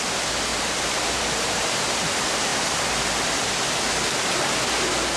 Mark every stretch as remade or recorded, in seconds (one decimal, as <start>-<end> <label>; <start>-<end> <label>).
0.0-0.5 recorded; 0.5-2.1 remade; 2.1-5.2 recorded